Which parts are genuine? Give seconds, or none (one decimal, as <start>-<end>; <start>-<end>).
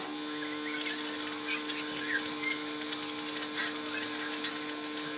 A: 0.0-5.2